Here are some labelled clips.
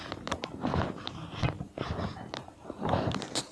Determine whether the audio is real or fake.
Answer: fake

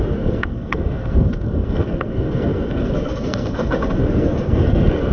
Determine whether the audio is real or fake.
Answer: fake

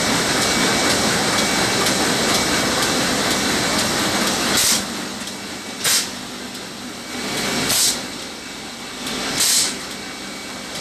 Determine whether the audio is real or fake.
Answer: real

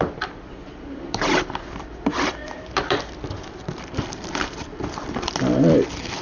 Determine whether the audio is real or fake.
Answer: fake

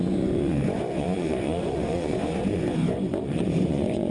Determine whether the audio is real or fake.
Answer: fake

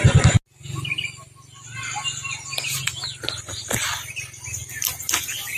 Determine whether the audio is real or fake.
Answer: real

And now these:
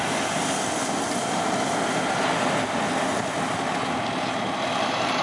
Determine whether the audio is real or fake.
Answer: real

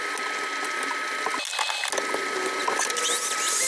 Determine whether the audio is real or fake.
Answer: real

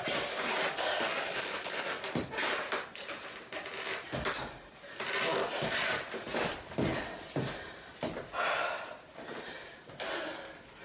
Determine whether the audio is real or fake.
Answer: real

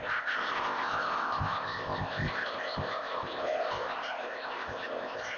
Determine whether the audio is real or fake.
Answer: fake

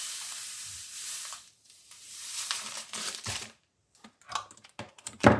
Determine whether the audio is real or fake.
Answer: fake